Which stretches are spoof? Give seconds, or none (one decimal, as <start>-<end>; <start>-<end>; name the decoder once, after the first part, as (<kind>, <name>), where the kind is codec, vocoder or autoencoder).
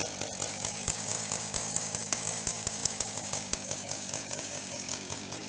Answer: 0.5-5.5 (codec, DAC)